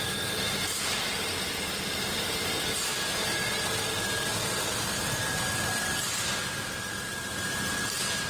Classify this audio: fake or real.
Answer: real